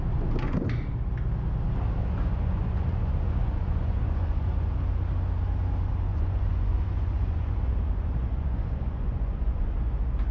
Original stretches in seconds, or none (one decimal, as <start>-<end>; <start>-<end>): 0.0-2.0; 4.7-6.1; 9.8-10.3